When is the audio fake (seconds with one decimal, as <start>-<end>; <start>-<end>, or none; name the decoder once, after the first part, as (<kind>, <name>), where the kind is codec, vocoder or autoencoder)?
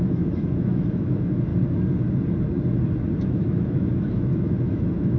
0.0-1.5 (autoencoder, DAC-VAE); 3.2-5.2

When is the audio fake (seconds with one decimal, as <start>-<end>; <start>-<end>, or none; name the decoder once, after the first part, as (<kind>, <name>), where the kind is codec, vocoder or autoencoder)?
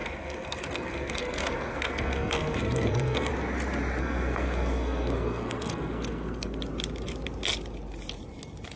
0.0-3.3 (codec, SNAC); 4.0-6.6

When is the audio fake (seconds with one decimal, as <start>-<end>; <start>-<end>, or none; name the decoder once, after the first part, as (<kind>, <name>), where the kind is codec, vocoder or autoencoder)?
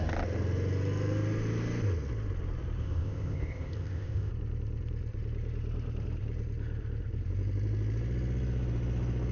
2.8-4.3 (codec, ZipCodec)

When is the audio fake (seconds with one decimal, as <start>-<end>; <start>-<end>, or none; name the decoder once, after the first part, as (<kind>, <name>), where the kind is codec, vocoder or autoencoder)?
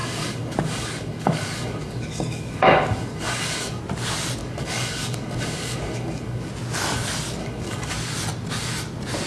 0.0-3.8 (codec, DAC); 4.4-6.5; 7.4-7.9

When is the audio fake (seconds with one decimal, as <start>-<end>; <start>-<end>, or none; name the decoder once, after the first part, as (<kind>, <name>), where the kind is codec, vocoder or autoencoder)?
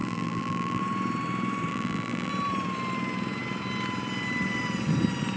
0.0-0.8 (vocoder, BigVGAN v2); 1.7-2.3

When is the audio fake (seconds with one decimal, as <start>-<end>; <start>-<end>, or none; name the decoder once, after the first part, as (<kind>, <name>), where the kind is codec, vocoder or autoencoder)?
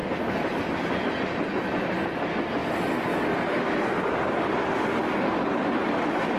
0.0-0.6 (vocoder, BigVGAN v2)